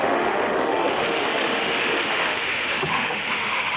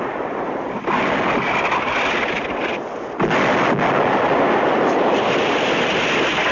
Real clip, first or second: second